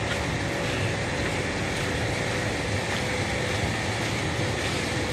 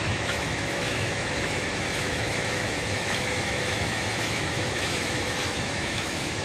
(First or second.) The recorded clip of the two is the first